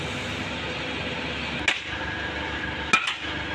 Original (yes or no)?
yes